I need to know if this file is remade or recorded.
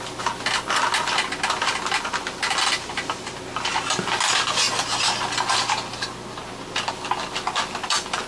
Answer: recorded